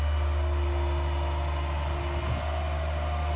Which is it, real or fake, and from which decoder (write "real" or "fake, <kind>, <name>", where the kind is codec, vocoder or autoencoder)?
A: real